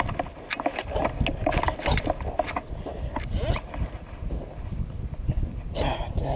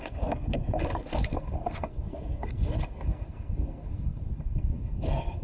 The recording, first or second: first